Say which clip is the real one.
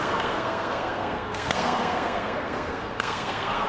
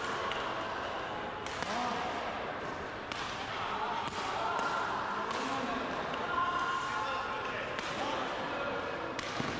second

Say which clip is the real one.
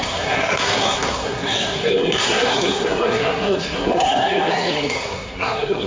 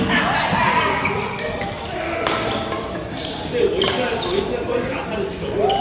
second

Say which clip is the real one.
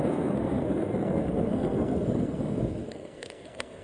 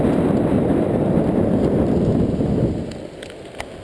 second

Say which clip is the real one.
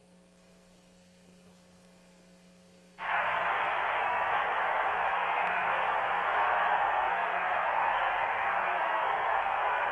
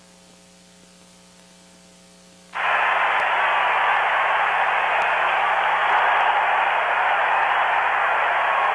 second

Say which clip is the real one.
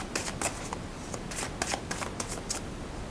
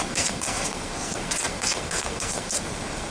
first